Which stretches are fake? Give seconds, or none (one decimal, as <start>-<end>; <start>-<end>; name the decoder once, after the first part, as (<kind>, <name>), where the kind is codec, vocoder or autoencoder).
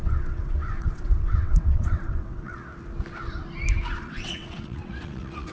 0.0-2.6 (vocoder, WaveNeXt); 4.0-5.5